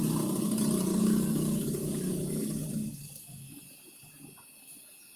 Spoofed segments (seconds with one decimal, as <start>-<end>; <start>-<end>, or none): 0.9-3.6